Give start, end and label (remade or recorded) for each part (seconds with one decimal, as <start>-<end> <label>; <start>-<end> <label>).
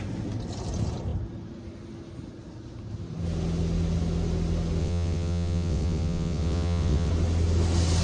0.0-4.8 recorded; 4.8-7.1 remade; 7.1-8.0 recorded